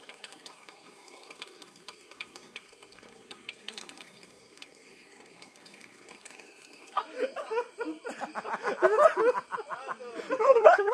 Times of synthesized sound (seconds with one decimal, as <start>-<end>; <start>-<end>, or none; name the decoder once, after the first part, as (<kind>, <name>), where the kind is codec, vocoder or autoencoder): 0.0-7.0 (codec, SNAC); 10.4-10.9

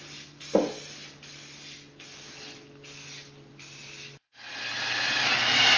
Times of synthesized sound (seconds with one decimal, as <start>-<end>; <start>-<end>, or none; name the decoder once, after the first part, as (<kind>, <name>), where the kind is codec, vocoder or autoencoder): none

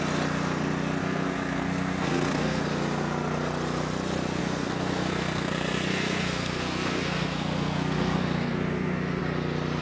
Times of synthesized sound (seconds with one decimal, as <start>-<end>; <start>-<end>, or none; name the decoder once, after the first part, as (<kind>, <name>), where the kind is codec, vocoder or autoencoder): 1.0-2.6 (codec, SNAC); 4.4-9.2

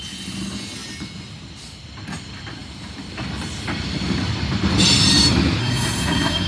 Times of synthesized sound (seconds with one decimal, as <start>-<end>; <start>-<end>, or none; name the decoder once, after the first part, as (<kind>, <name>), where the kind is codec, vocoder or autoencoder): 5.6-6.5 (codec, SNAC)

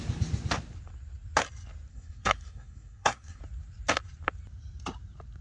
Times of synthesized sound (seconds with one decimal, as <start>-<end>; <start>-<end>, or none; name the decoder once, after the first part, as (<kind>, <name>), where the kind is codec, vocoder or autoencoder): 1.9-3.4 (codec, SNAC)